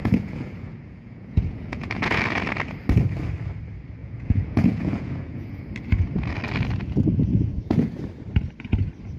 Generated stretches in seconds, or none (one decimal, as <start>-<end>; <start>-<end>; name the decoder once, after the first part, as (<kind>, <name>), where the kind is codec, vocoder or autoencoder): 0.0-2.2 (vocoder, Vocos); 4.0-5.6; 7.3-7.9